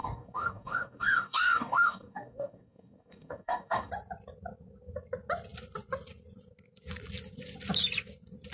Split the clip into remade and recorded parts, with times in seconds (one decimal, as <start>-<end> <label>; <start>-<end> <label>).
0.0-3.9 remade; 3.9-8.5 recorded